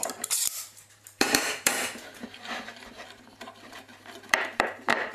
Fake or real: fake